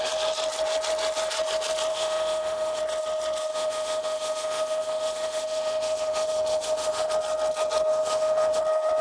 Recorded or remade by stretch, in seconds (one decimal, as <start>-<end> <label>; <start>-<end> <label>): 0.0-1.9 recorded; 1.9-2.8 remade; 2.8-3.5 recorded; 3.5-7.1 remade; 7.1-7.9 recorded; 7.9-8.6 remade; 8.6-9.0 recorded